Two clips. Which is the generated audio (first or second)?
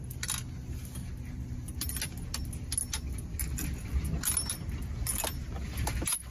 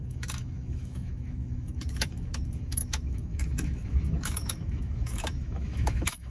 second